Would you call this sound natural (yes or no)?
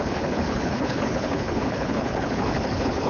no